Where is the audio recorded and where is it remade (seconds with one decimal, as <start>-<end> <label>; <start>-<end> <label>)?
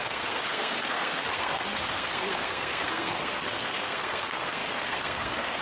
0.0-5.6 remade